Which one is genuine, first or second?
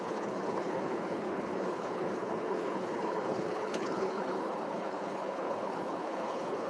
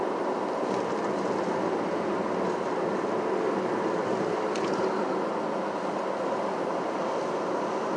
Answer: second